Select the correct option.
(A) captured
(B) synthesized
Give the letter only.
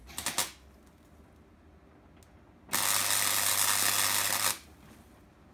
A